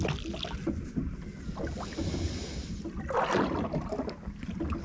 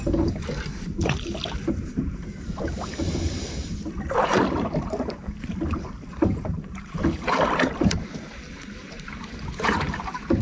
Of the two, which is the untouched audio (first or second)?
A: first